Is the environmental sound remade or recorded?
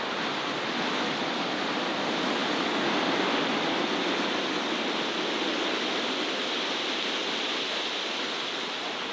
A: recorded